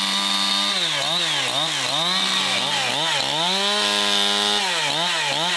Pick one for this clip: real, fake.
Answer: real